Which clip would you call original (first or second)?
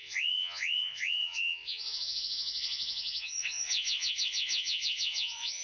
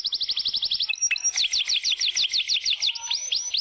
second